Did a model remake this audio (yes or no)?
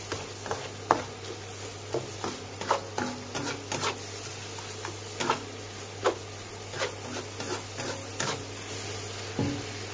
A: no